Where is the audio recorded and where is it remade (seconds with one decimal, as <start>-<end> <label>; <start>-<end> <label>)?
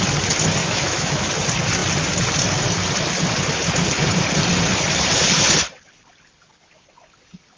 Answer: 0.0-0.6 recorded; 0.6-1.2 remade; 1.2-7.6 recorded